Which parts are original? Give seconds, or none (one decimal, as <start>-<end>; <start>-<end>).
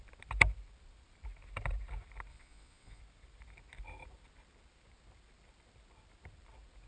0.0-2.3; 3.0-6.9